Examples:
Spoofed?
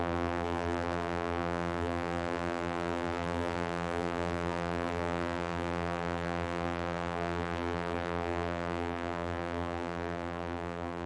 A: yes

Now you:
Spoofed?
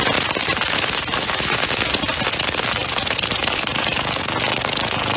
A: no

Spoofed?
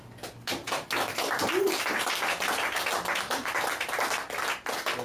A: no